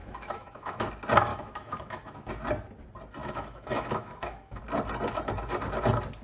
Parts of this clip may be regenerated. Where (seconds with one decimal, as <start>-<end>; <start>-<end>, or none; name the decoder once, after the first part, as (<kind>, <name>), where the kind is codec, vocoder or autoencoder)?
0.0-0.9 (autoencoder, DAC-VAE); 1.3-2.3; 3.2-4.6